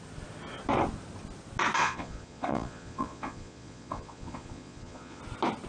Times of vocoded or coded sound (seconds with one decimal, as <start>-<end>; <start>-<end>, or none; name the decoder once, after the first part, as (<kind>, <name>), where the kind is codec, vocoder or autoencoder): 1.8-5.2 (vocoder, Vocos)